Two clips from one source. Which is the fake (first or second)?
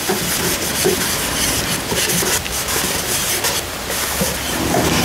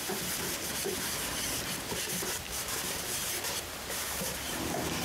second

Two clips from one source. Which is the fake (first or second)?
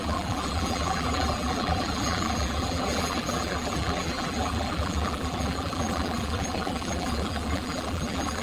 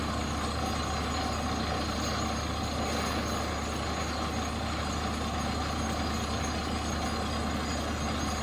first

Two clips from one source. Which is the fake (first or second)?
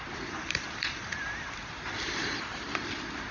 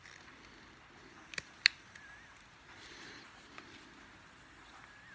first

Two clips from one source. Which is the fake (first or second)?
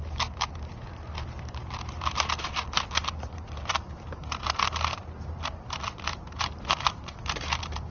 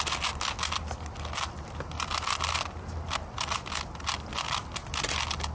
first